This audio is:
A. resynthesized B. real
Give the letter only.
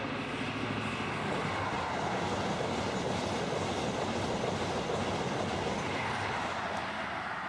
B